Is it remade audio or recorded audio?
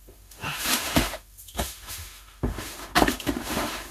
remade